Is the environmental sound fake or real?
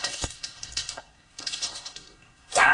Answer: fake